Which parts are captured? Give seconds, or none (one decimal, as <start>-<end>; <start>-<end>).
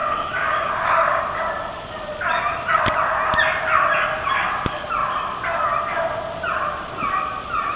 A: 1.2-7.8